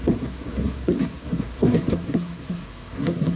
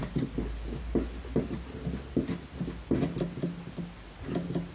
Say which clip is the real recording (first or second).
second